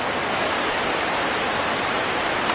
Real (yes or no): yes